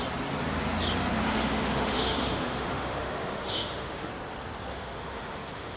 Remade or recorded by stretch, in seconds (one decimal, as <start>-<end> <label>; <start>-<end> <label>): 0.0-1.3 recorded; 1.3-4.1 remade; 4.1-4.7 recorded; 4.7-5.8 remade